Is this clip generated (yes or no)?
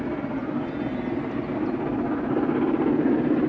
no